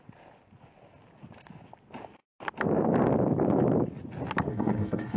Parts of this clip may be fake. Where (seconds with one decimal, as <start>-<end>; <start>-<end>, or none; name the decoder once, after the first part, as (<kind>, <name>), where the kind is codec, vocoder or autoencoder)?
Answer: 4.5-5.2 (codec, SNAC)